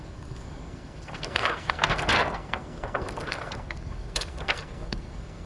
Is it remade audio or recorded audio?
remade